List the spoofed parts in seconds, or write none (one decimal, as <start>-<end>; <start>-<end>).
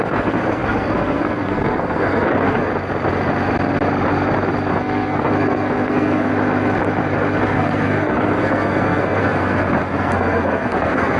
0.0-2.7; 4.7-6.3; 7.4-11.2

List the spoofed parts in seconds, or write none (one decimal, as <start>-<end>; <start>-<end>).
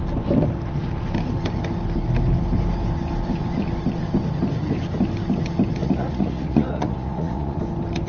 5.8-7.6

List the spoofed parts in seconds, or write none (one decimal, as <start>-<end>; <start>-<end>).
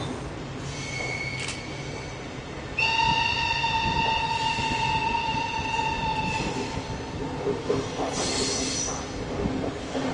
none